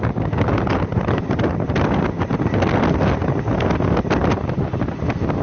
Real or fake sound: real